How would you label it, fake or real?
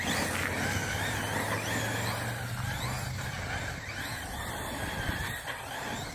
real